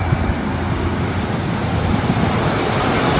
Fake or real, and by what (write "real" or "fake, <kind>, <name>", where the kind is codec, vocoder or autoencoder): real